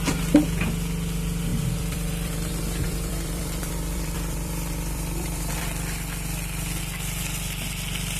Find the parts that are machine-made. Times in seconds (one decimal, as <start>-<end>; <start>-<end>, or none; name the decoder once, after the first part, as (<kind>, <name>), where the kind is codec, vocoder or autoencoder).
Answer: 1.5-5.6 (vocoder, BigVGAN v2)